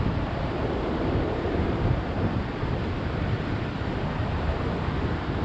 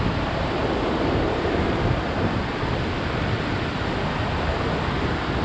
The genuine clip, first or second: second